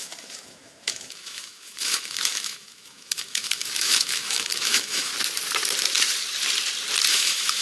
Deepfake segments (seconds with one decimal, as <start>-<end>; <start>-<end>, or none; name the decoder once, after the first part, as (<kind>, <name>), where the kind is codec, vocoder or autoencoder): 0.0-5.1 (autoencoder, DAC-VAE); 7.1-7.6